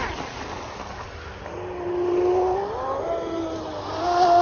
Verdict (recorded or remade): recorded